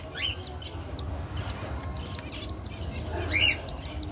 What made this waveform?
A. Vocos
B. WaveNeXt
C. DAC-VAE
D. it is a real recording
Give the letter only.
D